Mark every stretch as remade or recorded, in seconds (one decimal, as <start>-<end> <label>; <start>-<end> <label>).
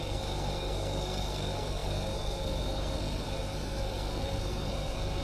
0.0-5.2 remade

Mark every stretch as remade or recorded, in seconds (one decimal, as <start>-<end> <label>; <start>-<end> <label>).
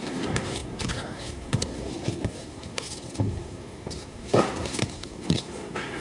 0.0-6.0 remade